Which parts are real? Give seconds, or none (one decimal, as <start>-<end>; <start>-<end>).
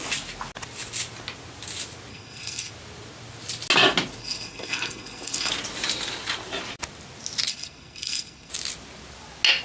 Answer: 0.0-2.1; 2.7-4.2; 5.5-7.5; 8.5-9.6